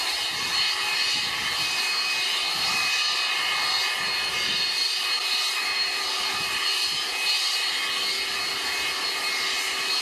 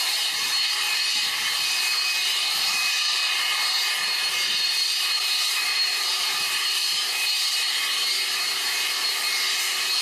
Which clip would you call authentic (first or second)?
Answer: first